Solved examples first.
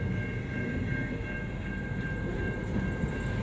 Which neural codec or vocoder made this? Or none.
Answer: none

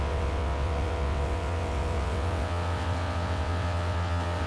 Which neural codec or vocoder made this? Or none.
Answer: vocoder, WaveNeXt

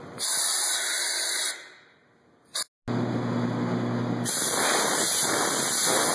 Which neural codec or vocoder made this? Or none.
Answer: none